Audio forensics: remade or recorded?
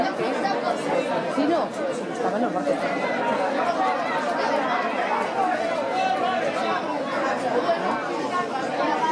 recorded